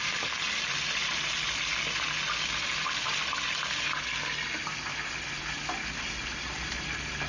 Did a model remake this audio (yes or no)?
no